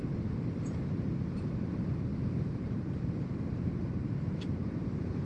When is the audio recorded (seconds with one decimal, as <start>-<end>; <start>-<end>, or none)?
0.0-5.3